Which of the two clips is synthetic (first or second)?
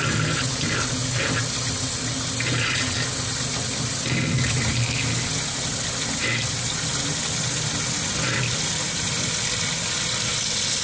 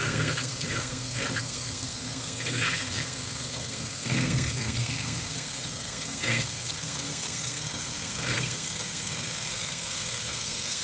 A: second